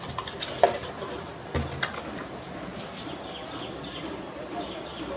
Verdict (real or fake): real